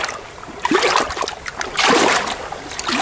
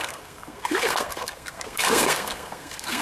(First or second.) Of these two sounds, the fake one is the second